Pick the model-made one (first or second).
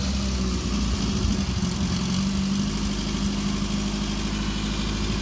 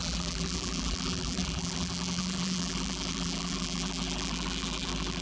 second